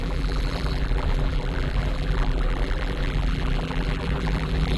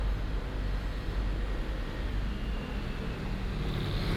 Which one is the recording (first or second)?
second